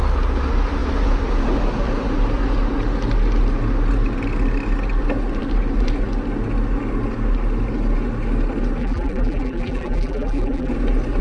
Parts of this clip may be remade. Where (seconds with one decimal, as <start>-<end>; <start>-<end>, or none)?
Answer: 8.8-10.7